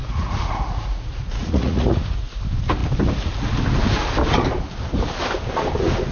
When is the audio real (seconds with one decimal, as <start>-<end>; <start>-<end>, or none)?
2.4-6.1

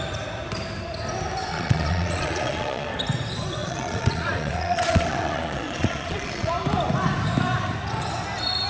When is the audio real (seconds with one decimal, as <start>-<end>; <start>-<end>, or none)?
0.0-1.5; 2.9-3.6; 6.5-8.7

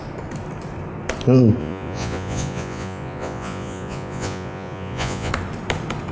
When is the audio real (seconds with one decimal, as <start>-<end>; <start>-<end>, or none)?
0.0-1.6; 5.3-6.1

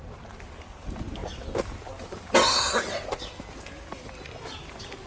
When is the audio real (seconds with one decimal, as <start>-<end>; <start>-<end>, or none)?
0.0-5.1